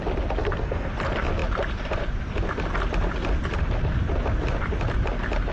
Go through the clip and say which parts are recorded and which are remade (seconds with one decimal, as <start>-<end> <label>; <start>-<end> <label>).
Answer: 0.0-0.4 recorded; 0.4-0.9 remade; 0.9-5.5 recorded